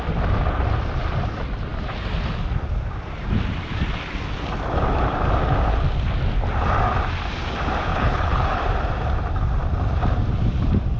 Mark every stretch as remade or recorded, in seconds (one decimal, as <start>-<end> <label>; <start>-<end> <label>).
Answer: 0.0-7.9 recorded; 7.9-8.6 remade; 8.6-11.0 recorded